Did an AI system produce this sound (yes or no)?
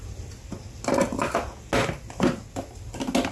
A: no